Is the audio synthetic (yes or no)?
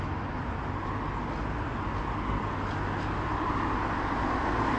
no